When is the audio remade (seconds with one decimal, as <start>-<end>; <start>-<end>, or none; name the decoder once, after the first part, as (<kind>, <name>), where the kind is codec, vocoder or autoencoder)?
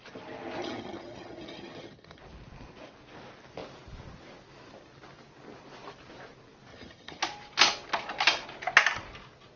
0.6-2.2 (vocoder, HiFi-GAN); 6.7-7.2